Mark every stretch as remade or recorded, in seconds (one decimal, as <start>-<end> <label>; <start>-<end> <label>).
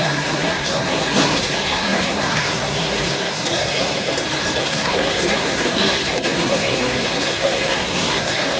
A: 0.0-4.1 remade; 4.1-4.6 recorded; 4.6-8.6 remade